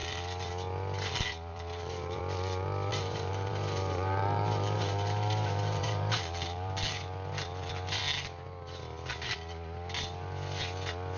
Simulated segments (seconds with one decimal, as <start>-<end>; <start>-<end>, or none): 1.5-2.2; 2.9-6.7